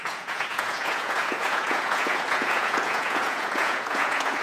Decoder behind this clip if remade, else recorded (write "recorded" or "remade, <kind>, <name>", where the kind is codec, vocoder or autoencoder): remade, vocoder, Vocos